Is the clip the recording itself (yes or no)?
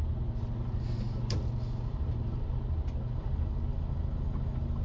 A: yes